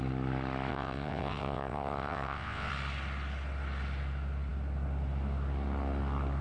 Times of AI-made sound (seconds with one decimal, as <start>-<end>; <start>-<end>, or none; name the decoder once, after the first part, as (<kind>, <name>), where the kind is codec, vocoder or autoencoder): 0.7-2.7 (vocoder, WaveNeXt)

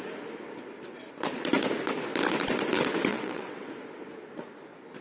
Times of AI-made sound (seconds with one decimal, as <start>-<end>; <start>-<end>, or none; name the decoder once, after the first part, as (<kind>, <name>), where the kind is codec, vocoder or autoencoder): 3.1-3.7 (vocoder, WaveNeXt)

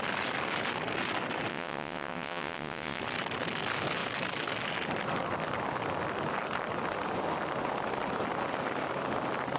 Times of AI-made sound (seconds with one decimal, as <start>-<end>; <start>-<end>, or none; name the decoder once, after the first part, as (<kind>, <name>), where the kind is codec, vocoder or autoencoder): 1.5-3.0 (vocoder, WaveNeXt)

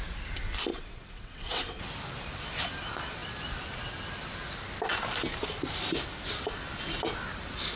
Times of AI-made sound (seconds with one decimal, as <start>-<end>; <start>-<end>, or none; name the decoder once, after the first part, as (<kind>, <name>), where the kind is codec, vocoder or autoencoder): 0.7-1.8 (vocoder, WaveNeXt)

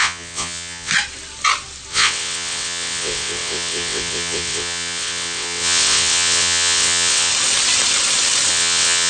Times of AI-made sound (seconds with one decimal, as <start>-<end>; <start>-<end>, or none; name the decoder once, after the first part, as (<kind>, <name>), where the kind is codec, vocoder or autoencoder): 0.0-0.9 (vocoder, WaveNeXt); 1.9-7.3; 8.5-9.1